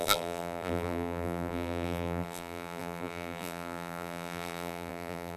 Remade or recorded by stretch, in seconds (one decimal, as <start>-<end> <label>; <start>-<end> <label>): 0.0-5.4 remade